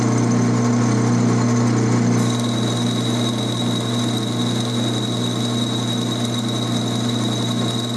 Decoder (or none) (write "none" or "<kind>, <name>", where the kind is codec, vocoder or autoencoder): none